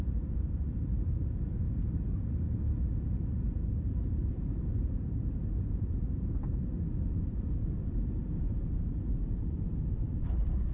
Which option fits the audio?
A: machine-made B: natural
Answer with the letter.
A